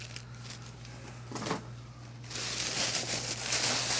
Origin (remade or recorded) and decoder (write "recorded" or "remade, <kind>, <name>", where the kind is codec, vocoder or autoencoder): recorded